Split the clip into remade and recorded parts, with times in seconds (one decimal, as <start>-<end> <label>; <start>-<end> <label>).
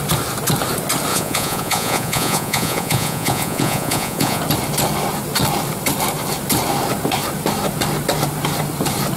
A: 0.0-1.1 recorded; 1.1-4.4 remade; 4.4-9.2 recorded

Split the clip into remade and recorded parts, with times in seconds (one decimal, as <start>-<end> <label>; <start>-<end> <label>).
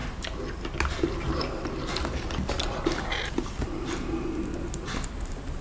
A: 0.0-5.6 recorded